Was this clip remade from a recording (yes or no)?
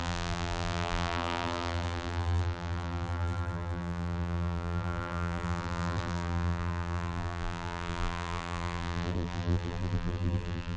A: yes